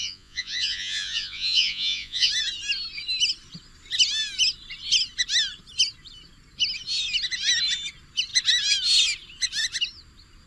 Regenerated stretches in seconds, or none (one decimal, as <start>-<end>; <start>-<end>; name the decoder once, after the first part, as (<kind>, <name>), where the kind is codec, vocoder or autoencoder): 0.0-2.3 (vocoder, Vocos)